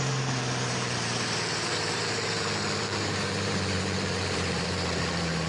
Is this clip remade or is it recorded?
remade